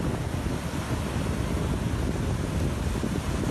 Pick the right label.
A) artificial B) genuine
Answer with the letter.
B